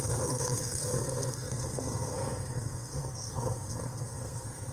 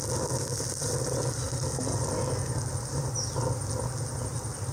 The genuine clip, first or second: second